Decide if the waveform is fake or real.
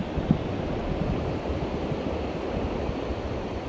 real